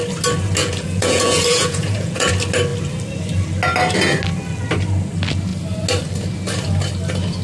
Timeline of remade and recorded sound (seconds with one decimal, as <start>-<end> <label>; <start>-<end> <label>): 0.0-0.6 recorded; 0.6-2.3 remade; 2.3-7.4 recorded